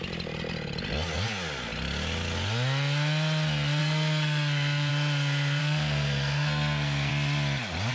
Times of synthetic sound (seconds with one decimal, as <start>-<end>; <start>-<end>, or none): 3.8-4.9; 5.6-7.1